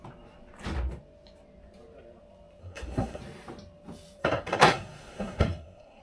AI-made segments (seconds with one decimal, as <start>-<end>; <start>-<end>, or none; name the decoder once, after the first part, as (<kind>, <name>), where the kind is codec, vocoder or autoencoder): 2.6-3.2 (codec, SNAC); 4.2-6.0